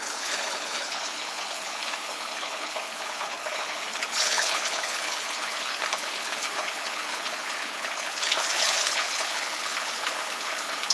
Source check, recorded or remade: remade